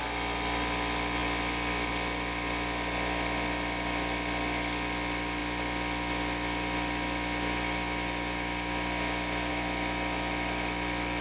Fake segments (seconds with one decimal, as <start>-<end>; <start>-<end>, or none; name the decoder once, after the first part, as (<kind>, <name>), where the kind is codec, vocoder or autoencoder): none